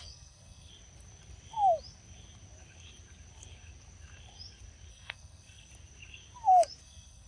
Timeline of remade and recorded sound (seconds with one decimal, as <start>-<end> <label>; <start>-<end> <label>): 0.0-0.7 remade; 0.7-4.9 recorded; 4.9-5.7 remade; 5.7-6.8 recorded; 6.8-7.3 remade